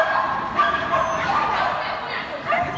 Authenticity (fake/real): real